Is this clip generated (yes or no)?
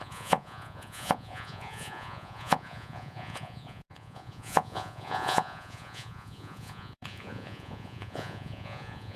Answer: yes